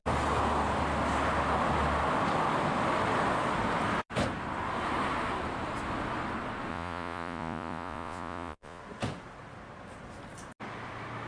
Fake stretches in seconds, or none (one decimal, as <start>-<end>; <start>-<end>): 6.7-8.8